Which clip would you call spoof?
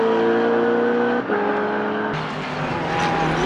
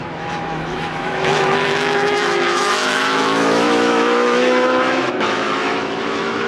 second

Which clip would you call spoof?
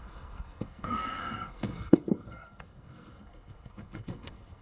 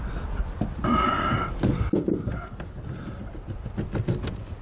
first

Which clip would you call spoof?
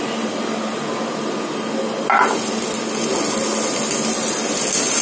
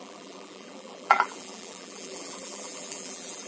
second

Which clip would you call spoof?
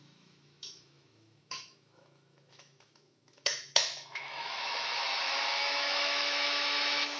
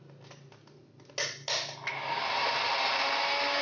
first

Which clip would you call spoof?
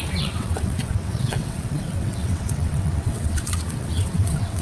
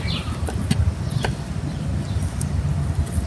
first